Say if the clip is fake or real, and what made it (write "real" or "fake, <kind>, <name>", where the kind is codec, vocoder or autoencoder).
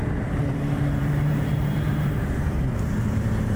fake, vocoder, BigVGAN v2